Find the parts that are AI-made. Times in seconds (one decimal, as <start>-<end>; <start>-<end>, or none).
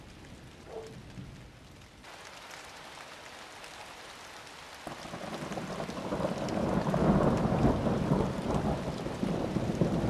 none